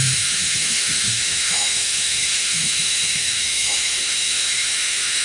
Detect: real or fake fake